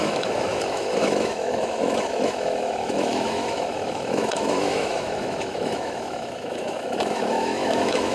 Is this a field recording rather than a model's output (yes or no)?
no